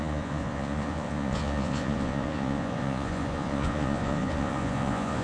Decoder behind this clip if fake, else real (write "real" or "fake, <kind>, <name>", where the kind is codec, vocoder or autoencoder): fake, vocoder, Vocos